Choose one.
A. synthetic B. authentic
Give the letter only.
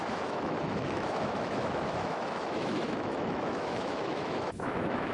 A